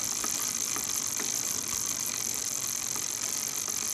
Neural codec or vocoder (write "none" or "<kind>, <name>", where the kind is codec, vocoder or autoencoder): none